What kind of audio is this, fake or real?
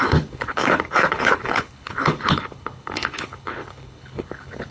fake